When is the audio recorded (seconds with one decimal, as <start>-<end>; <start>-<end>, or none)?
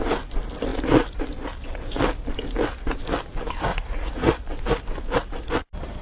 0.0-3.7; 4.3-6.0